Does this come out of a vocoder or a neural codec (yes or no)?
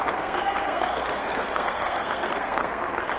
yes